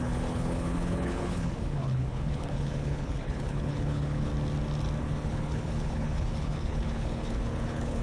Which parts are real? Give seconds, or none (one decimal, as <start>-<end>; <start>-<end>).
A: 4.3-5.0